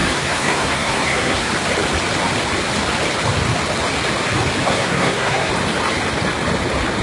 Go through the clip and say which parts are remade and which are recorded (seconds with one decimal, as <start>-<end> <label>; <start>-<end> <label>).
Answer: 0.0-1.5 remade; 1.5-4.6 recorded; 4.6-5.5 remade; 5.5-7.0 recorded